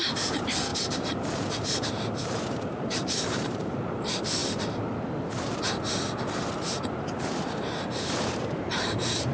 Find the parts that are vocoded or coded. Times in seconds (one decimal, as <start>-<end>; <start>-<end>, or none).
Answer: 0.0-4.4; 7.2-9.3